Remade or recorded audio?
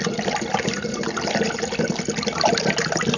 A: recorded